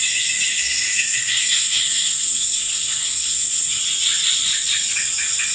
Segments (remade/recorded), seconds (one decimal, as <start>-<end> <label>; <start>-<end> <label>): 0.0-0.5 recorded; 0.5-3.8 remade; 3.8-5.5 recorded